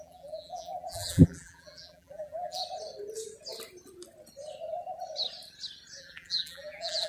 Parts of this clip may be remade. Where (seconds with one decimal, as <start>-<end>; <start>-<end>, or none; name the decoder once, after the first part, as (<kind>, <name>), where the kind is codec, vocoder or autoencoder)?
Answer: 0.0-2.6 (vocoder, BigVGAN v2); 6.0-7.1